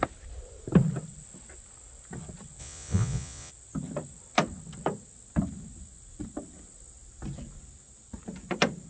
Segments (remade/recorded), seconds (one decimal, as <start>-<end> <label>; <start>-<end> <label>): 0.0-2.6 recorded; 2.6-3.5 remade; 3.5-8.9 recorded